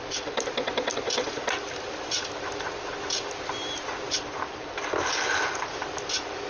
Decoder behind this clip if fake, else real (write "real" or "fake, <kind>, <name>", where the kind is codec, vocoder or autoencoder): real